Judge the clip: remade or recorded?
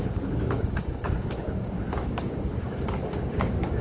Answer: remade